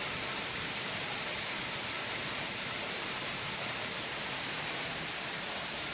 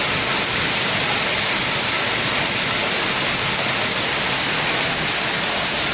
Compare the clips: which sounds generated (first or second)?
first